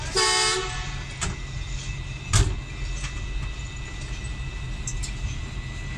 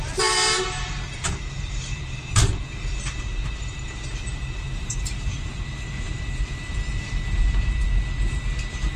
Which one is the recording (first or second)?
first